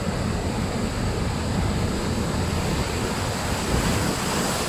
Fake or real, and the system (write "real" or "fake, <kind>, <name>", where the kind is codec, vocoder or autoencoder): real